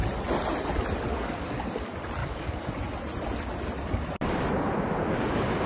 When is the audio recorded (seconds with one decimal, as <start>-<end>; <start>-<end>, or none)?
0.0-1.1; 1.7-2.2; 2.7-5.7